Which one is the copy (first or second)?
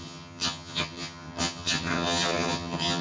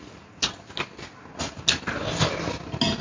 first